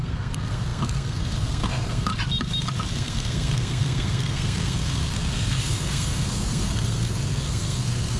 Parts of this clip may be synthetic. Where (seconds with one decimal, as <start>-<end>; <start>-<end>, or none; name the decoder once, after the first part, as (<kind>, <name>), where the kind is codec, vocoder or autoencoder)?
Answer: 0.0-2.1 (codec, SNAC); 2.9-8.2